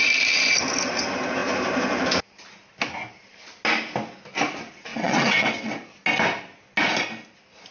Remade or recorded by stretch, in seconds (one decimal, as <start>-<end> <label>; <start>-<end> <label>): 0.0-4.9 recorded; 4.9-5.7 remade; 5.7-7.7 recorded